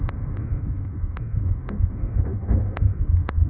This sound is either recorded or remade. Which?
remade